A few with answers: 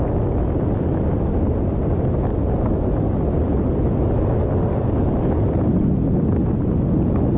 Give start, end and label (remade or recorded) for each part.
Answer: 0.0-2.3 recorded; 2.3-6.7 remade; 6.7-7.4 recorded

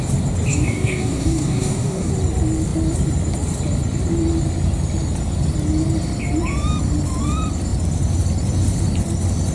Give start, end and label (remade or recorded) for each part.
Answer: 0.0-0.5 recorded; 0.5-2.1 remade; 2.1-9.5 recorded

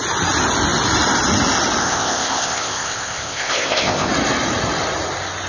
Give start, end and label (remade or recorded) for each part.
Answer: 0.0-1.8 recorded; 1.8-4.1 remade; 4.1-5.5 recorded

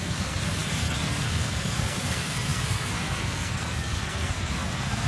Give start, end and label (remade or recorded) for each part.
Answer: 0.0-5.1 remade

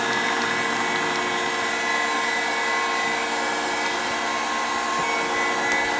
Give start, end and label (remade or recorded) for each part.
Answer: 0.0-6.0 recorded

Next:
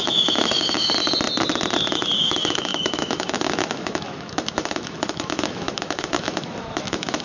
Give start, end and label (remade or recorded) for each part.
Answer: 0.0-0.8 remade; 0.8-1.9 recorded; 1.9-7.2 remade